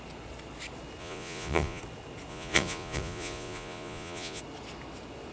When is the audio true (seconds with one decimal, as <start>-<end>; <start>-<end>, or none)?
0.0-1.0; 1.8-2.3; 4.4-5.3